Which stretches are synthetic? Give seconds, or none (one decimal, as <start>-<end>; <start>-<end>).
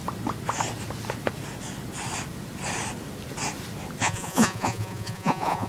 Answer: 4.0-5.7